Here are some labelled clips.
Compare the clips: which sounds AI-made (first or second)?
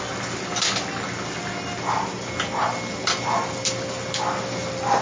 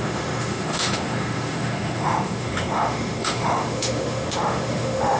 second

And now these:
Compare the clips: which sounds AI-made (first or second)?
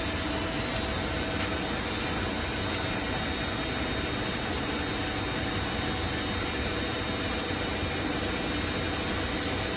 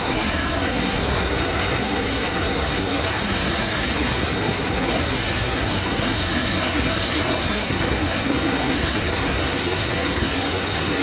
second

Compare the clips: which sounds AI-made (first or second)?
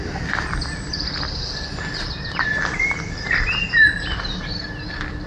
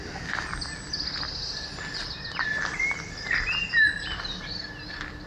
first